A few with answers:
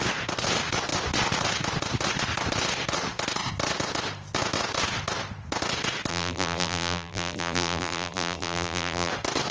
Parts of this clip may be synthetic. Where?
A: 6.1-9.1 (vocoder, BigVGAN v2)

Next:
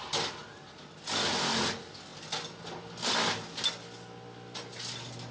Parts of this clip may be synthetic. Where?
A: none

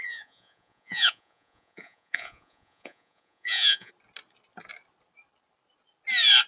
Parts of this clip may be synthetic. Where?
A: 0.0-3.9 (vocoder, Vocos)

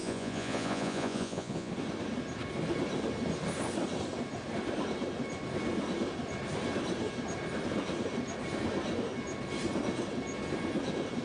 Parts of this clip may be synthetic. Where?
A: 0.0-1.7 (vocoder, Vocos)

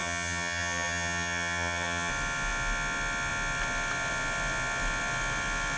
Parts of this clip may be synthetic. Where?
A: 0.0-2.1 (vocoder, HiFi-GAN)